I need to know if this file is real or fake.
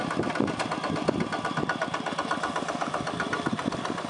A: real